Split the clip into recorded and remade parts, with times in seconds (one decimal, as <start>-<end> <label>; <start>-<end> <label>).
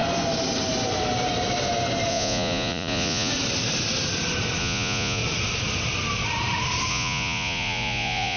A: 0.0-2.1 recorded; 2.1-3.3 remade; 3.3-4.6 recorded; 4.6-5.2 remade; 5.2-6.9 recorded; 6.9-8.4 remade